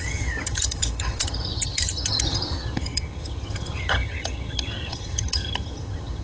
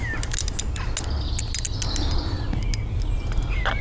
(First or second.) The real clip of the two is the second